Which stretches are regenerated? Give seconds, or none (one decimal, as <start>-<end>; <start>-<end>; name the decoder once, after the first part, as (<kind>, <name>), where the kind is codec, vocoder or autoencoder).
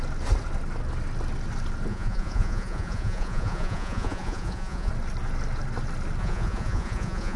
1.9-4.9 (vocoder, Vocos); 6.2-7.4